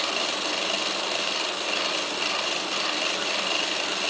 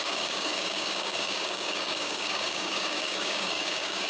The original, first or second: first